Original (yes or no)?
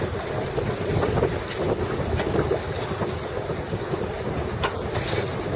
yes